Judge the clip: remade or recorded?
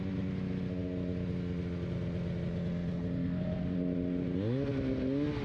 recorded